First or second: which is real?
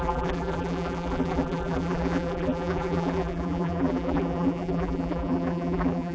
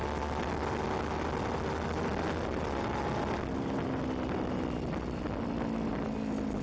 second